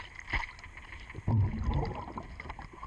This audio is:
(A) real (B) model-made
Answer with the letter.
A